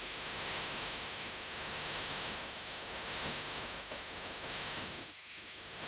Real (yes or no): no